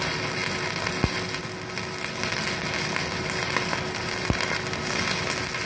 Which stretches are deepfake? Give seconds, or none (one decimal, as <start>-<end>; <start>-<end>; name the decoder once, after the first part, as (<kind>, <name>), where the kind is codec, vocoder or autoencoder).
none